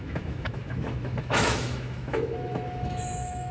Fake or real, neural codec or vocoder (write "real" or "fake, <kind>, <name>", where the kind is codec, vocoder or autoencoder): fake, autoencoder, DAC-VAE